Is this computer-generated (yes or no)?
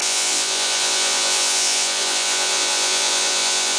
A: yes